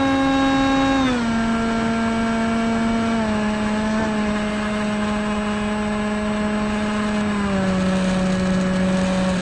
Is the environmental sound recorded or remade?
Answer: recorded